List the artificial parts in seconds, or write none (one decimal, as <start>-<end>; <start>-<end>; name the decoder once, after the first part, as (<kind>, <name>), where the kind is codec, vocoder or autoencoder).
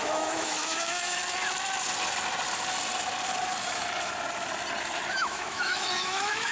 0.0-1.2 (autoencoder, DAC-VAE); 5.1-6.5